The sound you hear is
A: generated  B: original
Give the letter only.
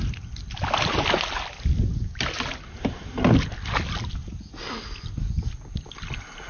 B